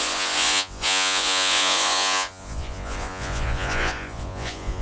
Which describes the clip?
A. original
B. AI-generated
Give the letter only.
B